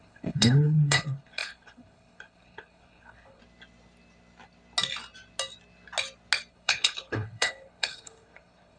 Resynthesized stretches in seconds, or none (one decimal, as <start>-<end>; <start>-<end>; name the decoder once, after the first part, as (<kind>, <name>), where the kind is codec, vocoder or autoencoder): 0.0-3.4 (codec, HILCodec); 6.5-8.8